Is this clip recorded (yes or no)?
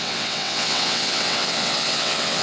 no